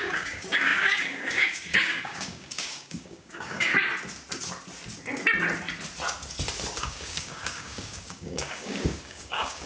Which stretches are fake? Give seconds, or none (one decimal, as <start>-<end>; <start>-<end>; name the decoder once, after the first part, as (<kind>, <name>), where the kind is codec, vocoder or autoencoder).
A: 0.0-3.7 (codec, DAC); 6.8-9.7